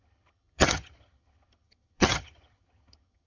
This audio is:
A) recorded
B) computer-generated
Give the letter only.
B